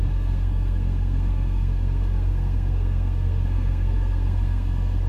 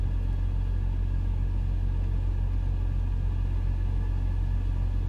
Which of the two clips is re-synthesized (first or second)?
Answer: first